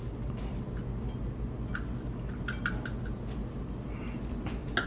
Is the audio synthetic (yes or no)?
no